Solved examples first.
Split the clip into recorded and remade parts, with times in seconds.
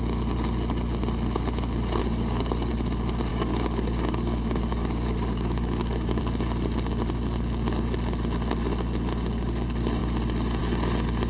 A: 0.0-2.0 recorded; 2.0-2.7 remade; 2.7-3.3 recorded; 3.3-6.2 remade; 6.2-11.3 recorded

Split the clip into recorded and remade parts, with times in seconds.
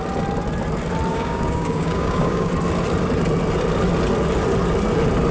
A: 0.0-1.1 recorded; 1.1-2.5 remade; 2.5-5.3 recorded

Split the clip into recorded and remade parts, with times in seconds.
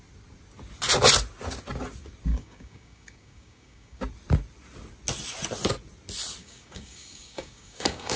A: 0.0-2.3 recorded; 2.3-4.0 remade; 4.0-6.4 recorded; 6.4-8.2 remade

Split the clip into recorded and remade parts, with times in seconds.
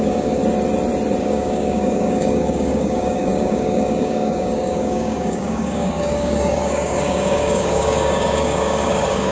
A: 0.0-0.4 remade; 0.4-1.2 recorded; 1.2-9.3 remade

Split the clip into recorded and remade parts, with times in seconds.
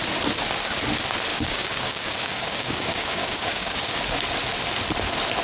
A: 0.0-1.3 recorded; 1.3-4.0 remade; 4.0-5.4 recorded